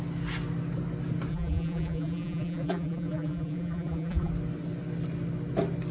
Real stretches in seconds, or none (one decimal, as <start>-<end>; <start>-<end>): 0.0-1.3; 4.3-5.9